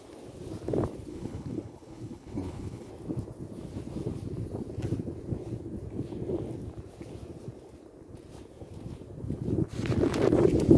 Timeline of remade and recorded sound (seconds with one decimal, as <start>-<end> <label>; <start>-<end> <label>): 0.0-1.1 recorded; 1.1-2.9 remade; 2.9-10.8 recorded